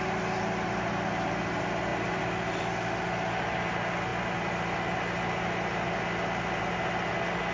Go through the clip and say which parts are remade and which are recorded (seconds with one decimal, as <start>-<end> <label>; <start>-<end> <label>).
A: 0.0-7.5 recorded